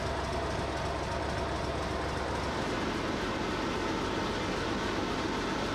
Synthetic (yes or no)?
no